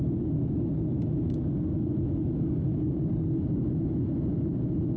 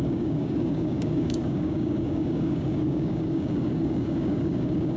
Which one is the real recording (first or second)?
first